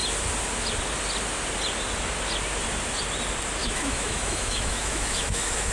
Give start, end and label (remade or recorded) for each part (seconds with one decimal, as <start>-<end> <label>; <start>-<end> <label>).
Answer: 0.0-3.6 recorded; 3.6-5.7 remade

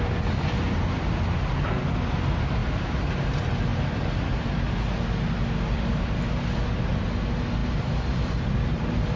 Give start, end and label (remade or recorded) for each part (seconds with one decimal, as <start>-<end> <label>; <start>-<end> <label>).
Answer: 0.0-7.6 recorded; 7.6-9.2 remade